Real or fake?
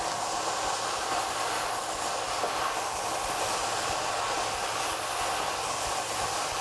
real